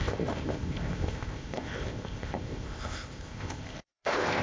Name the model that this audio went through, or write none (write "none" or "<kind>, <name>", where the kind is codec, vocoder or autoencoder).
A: codec, ZipCodec